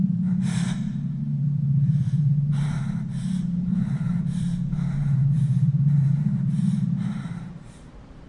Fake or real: fake